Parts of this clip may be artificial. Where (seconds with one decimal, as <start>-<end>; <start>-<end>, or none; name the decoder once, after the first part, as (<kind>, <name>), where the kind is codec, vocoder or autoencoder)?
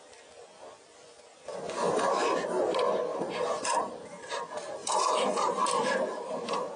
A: 1.3-2.0 (vocoder, BigVGAN v2); 3.1-4.3; 4.8-6.8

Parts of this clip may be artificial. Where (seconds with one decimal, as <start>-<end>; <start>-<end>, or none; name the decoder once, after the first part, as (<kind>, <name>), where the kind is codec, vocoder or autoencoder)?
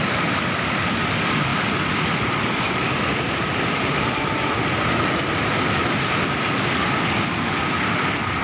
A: 1.5-4.9 (vocoder, BigVGAN v2)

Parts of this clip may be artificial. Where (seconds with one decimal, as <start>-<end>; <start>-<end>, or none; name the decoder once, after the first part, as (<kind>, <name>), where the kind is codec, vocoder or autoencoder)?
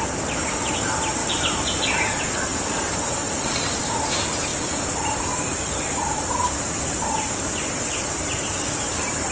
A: 1.2-1.9 (vocoder, BigVGAN v2); 4.5-7.8